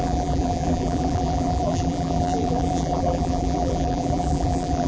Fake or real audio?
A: fake